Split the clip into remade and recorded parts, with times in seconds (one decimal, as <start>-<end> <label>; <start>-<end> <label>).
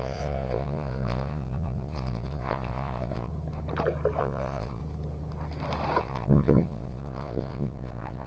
0.0-3.3 remade; 3.3-4.2 recorded; 4.2-4.8 remade; 4.8-6.0 recorded; 6.0-8.3 remade